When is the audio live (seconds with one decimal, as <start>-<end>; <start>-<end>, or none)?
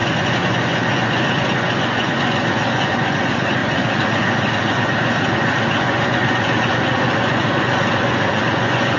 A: none